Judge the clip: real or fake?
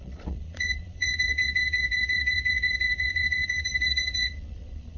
fake